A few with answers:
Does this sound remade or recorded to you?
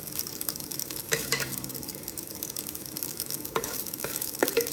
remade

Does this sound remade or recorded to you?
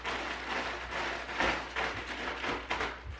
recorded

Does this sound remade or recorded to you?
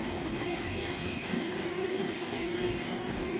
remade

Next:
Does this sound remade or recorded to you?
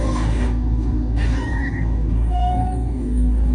remade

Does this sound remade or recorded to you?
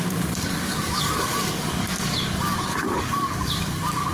remade